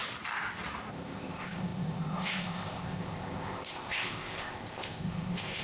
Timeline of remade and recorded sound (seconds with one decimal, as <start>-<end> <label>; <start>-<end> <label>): 0.0-0.9 recorded; 0.9-5.6 remade

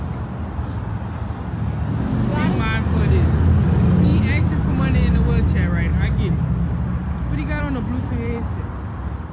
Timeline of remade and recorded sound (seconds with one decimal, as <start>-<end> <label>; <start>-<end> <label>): 0.0-9.3 recorded

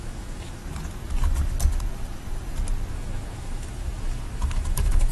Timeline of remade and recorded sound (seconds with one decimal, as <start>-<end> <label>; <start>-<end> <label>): 0.0-0.6 remade; 0.6-2.9 recorded; 2.9-5.1 remade